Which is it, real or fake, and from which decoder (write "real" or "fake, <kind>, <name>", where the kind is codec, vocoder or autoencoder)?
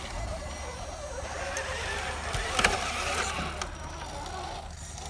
real